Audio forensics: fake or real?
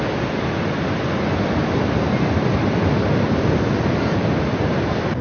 real